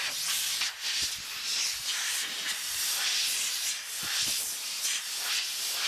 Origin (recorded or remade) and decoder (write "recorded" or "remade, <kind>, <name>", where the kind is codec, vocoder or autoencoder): recorded